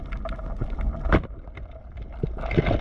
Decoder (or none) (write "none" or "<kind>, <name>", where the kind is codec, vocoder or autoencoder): none